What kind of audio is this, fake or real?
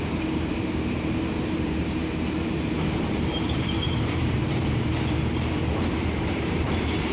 fake